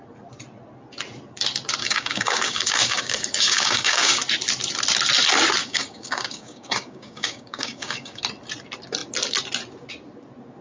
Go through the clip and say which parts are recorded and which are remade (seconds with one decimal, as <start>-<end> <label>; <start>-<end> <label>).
0.0-1.8 recorded; 1.8-4.2 remade; 4.2-5.6 recorded; 5.6-8.2 remade; 8.2-10.6 recorded